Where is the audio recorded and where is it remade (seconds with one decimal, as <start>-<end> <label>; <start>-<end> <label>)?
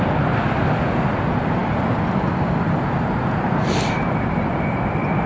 0.0-5.3 recorded